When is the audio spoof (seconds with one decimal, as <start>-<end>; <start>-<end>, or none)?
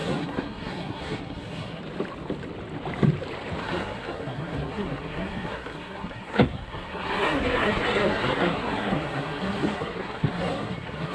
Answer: 0.0-1.8; 3.6-11.1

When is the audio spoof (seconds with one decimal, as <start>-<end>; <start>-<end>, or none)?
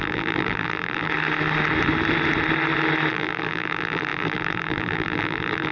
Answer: 0.0-1.1; 3.1-5.7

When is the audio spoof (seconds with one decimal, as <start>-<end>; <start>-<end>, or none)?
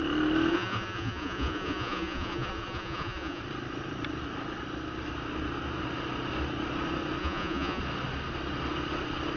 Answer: 0.5-3.4; 7.2-7.8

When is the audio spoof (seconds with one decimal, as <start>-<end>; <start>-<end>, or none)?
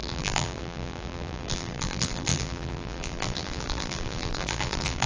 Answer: 0.0-5.1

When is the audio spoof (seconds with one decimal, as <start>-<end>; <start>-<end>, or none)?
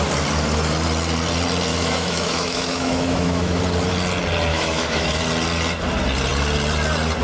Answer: 1.7-3.6; 4.5-5.2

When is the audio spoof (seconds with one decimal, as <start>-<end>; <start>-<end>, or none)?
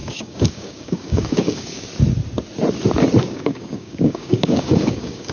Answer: 0.0-1.9; 3.2-5.3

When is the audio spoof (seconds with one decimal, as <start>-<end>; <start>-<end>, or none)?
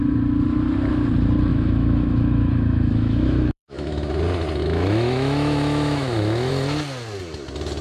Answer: 1.5-4.1; 4.6-6.5